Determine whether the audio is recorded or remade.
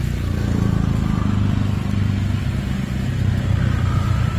recorded